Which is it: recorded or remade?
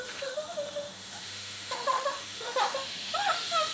remade